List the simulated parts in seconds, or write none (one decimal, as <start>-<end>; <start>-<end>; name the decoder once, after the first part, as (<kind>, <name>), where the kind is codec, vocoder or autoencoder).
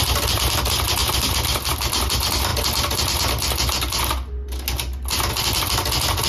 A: 0.0-1.0 (vocoder, BigVGAN v2); 1.7-2.5; 5.3-6.3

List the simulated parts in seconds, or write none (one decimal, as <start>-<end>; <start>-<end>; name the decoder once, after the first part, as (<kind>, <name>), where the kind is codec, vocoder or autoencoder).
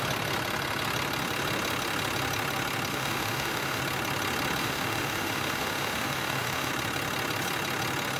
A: 2.9-3.8 (autoencoder, DAC-VAE); 4.6-6.7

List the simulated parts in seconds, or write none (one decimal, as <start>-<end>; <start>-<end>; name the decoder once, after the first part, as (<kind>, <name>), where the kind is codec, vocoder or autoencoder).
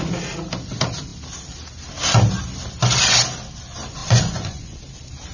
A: 4.0-4.8 (vocoder, Vocos)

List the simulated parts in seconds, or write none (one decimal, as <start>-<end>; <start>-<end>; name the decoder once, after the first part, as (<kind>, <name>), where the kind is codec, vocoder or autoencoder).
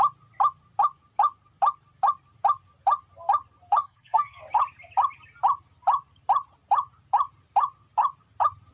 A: 3.8-4.4 (codec, SNAC)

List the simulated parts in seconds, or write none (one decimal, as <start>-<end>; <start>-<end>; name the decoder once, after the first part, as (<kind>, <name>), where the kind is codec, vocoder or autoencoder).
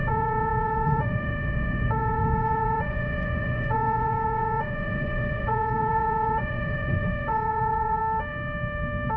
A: 0.0-8.0 (vocoder, Vocos)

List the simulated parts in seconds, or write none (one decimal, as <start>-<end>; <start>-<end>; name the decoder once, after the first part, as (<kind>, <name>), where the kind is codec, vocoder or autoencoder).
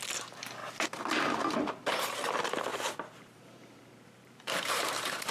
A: 2.7-5.3 (vocoder, BigVGAN v2)